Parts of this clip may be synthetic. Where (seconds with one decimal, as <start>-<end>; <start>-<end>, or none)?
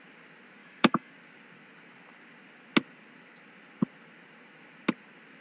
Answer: 0.6-1.1